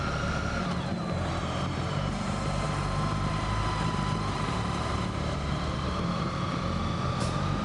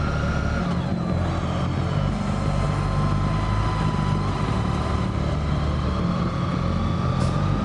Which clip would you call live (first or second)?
second